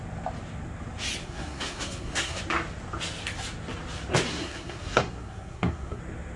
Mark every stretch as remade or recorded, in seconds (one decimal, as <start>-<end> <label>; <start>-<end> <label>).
0.0-1.2 recorded; 1.2-2.4 remade; 2.4-4.3 recorded; 4.3-6.0 remade; 6.0-6.4 recorded